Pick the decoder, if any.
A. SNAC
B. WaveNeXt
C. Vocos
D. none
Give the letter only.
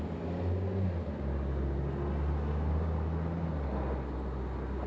D